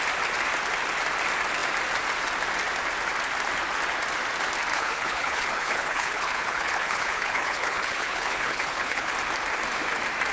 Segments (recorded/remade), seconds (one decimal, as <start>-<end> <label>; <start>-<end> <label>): 0.0-4.7 recorded; 4.7-9.1 remade; 9.1-10.3 recorded